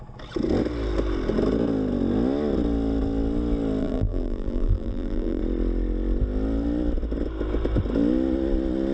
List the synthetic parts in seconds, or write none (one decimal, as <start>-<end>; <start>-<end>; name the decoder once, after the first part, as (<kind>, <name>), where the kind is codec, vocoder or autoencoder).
3.8-5.4 (vocoder, BigVGAN v2)